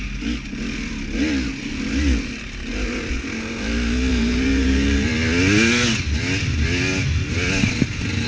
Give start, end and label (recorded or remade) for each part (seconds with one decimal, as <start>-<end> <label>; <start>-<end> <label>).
0.0-4.1 recorded; 4.1-5.1 remade; 5.1-8.3 recorded